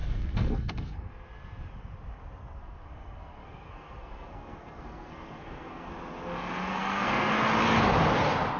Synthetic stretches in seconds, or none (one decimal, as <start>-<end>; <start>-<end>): 0.0-1.1; 2.4-5.9; 6.7-7.3